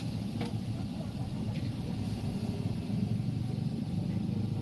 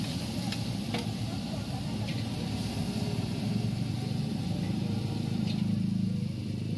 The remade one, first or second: first